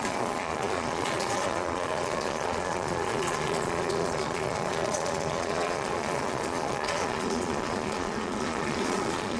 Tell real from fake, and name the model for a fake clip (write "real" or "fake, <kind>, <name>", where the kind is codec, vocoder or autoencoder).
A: fake, vocoder, Vocos